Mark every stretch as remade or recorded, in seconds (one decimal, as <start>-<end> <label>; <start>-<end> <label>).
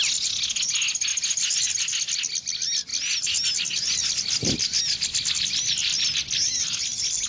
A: 0.0-7.3 recorded